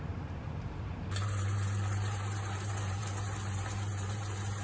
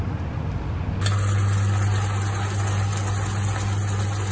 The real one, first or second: second